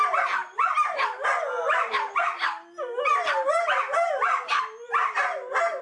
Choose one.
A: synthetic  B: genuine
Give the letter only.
B